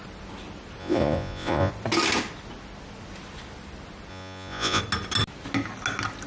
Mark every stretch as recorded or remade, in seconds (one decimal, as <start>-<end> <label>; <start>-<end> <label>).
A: 0.0-0.8 recorded; 0.8-1.7 remade; 1.7-4.1 recorded; 4.1-4.8 remade; 4.8-6.3 recorded